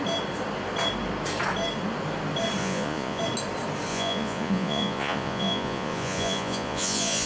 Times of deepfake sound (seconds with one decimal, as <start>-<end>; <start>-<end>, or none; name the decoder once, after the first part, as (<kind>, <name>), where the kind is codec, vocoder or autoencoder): 2.6-3.2 (vocoder, Vocos); 3.9-7.3